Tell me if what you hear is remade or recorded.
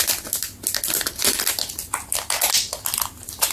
recorded